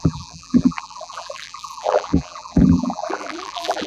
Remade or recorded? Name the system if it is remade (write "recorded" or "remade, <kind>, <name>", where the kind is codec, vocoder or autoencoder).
remade, vocoder, BigVGAN v2